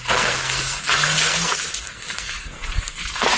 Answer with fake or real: fake